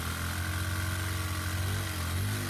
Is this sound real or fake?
real